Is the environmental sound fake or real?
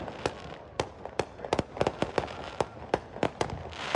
real